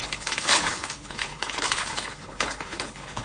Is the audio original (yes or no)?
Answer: no